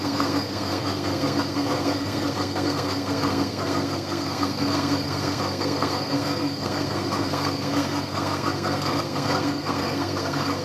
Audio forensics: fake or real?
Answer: fake